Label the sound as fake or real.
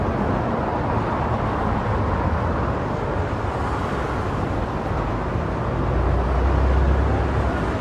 real